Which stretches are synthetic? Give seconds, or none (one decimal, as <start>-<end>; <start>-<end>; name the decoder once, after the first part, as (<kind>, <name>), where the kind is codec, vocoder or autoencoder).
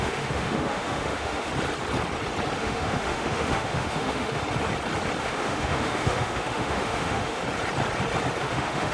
0.0-1.5 (autoencoder, DAC-VAE); 2.6-4.4; 5.2-7.4; 8.4-8.9